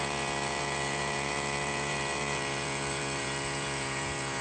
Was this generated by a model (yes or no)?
yes